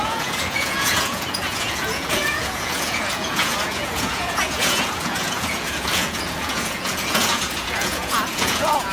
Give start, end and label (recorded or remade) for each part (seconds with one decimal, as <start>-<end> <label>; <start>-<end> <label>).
0.0-8.9 remade